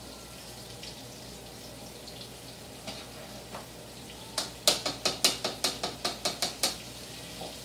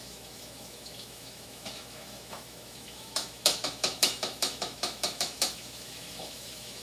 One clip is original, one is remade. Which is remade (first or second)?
second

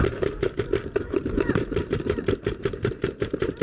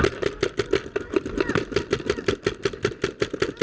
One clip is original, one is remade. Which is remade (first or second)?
first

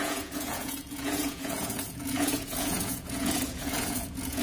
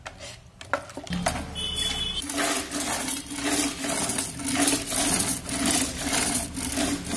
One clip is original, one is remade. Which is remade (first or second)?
first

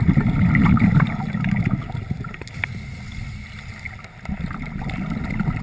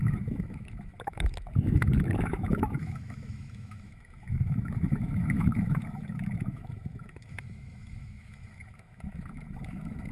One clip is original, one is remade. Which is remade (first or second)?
second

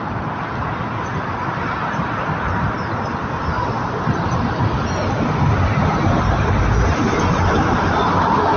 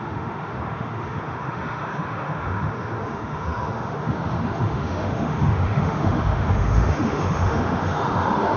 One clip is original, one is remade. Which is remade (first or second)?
second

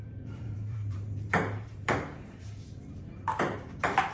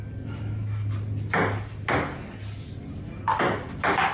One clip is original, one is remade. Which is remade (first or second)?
first